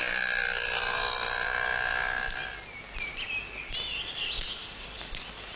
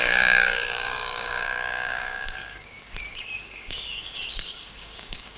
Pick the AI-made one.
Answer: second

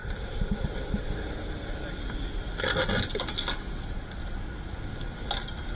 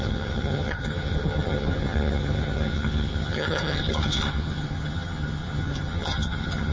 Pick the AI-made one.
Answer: second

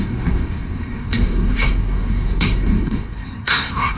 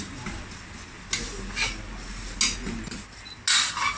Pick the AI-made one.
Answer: first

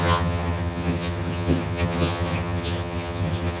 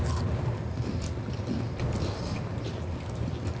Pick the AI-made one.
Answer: first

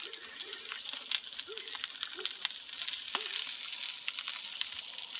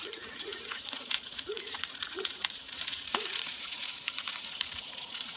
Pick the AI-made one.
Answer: second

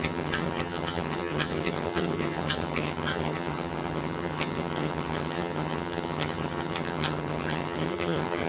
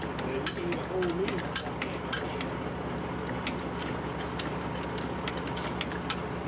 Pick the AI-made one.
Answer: first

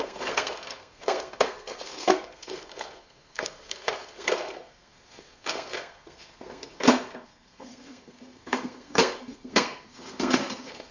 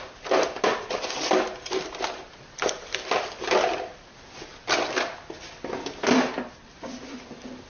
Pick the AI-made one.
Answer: first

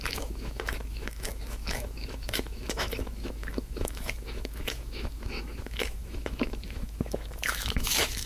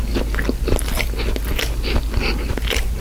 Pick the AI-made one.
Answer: first